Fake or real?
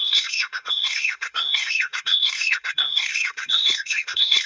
fake